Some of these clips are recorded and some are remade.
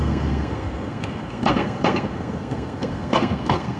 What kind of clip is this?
remade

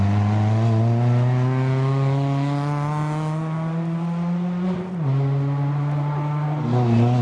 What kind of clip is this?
recorded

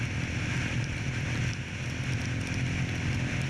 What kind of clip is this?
recorded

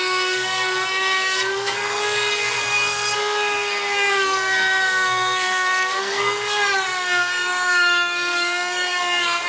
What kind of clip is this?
remade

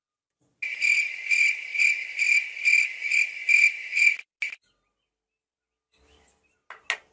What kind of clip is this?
recorded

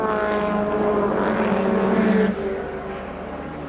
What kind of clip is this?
recorded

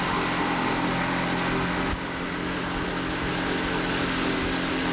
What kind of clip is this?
recorded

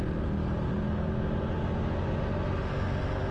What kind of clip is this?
recorded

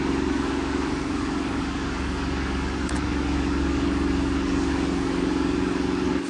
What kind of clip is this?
remade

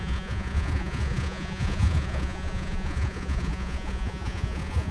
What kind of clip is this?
remade